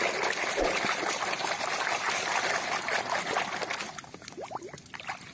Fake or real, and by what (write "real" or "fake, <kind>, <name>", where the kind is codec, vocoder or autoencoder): real